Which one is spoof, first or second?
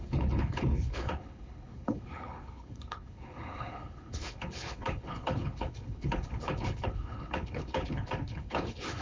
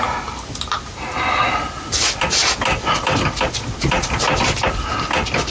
first